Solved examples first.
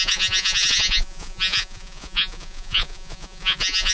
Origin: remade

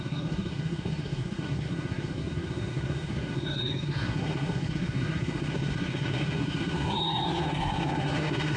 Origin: remade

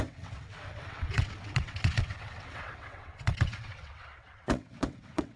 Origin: remade